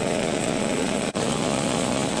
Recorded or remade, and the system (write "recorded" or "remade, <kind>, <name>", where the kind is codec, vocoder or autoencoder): remade, vocoder, Vocos